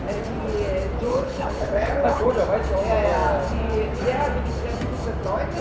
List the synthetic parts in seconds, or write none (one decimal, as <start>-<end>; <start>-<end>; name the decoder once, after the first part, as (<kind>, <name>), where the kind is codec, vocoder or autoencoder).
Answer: 1.1-2.3 (codec, HILCodec)